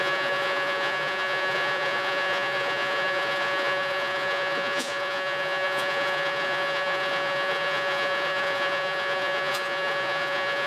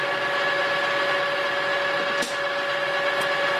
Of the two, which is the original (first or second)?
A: second